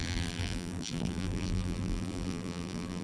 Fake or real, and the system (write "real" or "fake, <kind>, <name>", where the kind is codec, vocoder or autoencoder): fake, vocoder, BigVGAN v2